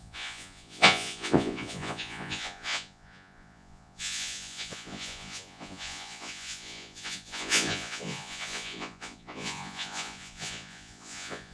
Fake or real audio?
fake